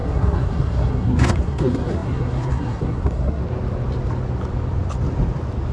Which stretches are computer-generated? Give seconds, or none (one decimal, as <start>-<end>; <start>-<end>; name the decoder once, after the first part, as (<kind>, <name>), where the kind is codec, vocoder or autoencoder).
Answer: 0.0-3.4 (codec, SNAC)